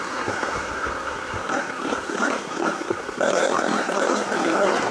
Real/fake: fake